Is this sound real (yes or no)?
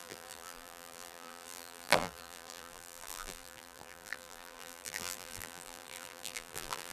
no